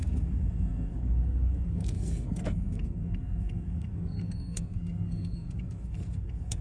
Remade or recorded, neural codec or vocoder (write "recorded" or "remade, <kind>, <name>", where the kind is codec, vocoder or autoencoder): remade, codec, SNAC